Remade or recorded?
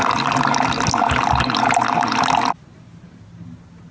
recorded